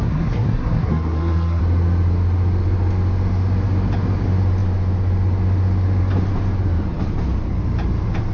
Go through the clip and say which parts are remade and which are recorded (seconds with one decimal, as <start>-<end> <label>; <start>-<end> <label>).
0.0-1.6 remade; 1.6-8.3 recorded